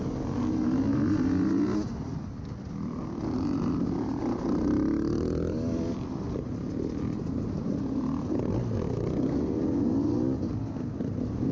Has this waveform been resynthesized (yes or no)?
no